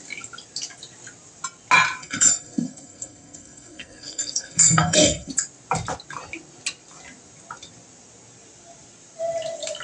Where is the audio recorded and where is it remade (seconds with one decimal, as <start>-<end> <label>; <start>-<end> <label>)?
0.0-2.0 recorded; 2.0-5.3 remade; 5.3-9.8 recorded